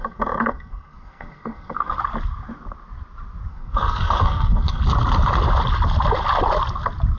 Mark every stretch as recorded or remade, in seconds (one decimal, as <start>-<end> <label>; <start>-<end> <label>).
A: 0.0-1.9 remade; 1.9-3.5 recorded; 3.5-4.8 remade; 4.8-7.2 recorded